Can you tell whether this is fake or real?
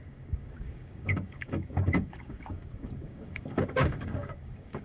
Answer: fake